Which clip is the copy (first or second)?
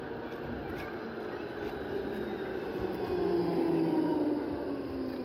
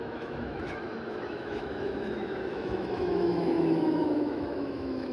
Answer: second